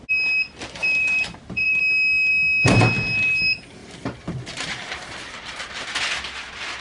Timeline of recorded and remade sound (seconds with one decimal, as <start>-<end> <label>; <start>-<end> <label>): 0.0-0.8 recorded; 0.8-1.8 remade; 1.8-3.8 recorded; 3.8-6.0 remade; 6.0-6.8 recorded